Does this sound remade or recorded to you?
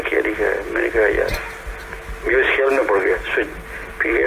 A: recorded